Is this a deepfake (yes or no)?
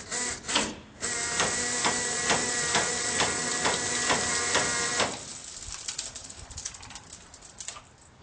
no